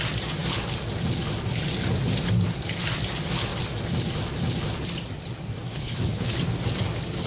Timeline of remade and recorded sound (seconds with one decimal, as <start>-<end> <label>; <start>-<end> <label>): 0.0-5.7 recorded; 5.7-6.4 remade; 6.4-7.3 recorded